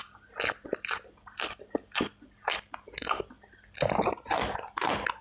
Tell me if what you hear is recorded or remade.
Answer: recorded